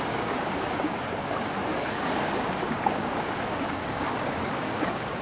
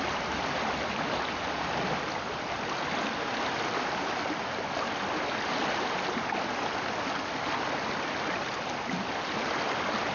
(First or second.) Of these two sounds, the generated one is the first